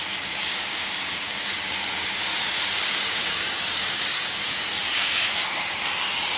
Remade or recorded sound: remade